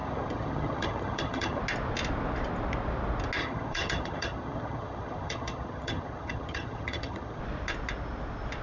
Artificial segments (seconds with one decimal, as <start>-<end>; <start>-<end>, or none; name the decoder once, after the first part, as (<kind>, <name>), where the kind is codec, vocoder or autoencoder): 0.0-1.6 (vocoder, HiFi-GAN); 3.4-7.4